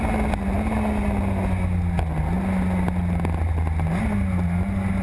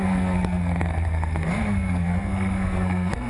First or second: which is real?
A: first